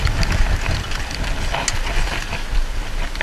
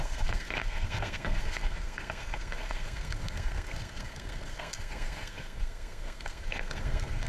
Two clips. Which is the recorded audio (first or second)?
first